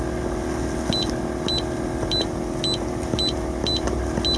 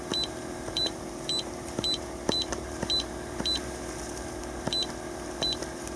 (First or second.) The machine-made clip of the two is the second